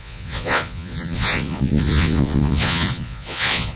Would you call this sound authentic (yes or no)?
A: no